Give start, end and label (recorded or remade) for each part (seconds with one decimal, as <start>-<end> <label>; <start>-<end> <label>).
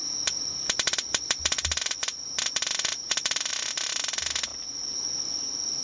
0.0-5.8 recorded